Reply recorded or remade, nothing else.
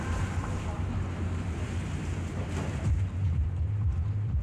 remade